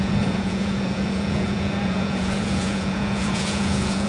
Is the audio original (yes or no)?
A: no